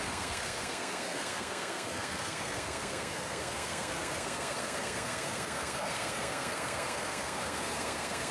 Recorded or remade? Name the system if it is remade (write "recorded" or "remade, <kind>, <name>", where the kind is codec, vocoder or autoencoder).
remade, codec, SNAC